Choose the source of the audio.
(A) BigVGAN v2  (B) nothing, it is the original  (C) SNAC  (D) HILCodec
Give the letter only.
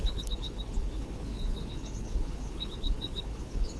D